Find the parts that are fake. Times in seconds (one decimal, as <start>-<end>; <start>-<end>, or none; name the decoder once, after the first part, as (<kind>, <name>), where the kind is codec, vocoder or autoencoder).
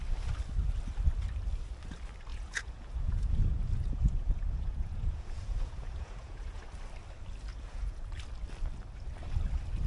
2.3-6.6 (vocoder, Vocos); 7.5-8.1